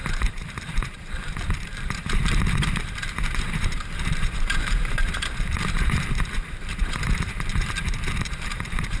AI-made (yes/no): yes